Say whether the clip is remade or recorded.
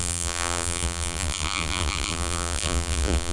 remade